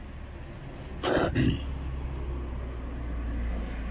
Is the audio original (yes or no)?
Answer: yes